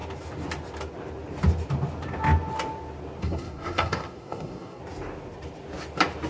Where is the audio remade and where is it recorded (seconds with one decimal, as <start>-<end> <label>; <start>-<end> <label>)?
0.0-3.2 recorded; 3.2-4.8 remade; 4.8-6.3 recorded